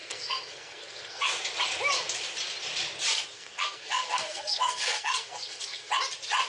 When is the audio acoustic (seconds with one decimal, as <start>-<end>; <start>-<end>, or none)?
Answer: 1.2-3.3; 5.9-6.5